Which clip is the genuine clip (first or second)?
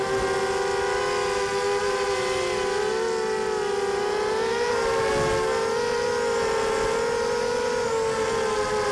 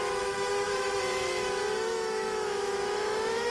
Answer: first